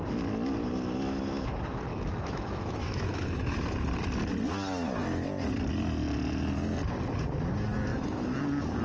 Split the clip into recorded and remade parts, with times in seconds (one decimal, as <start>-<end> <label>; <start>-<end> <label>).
0.0-1.9 recorded; 1.9-3.5 remade; 3.5-7.9 recorded; 7.9-8.4 remade; 8.4-8.8 recorded